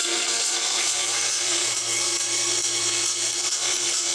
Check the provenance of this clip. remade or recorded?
remade